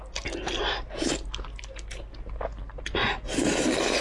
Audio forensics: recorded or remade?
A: recorded